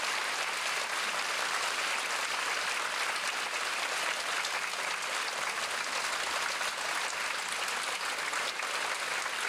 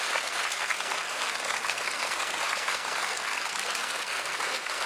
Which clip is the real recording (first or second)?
first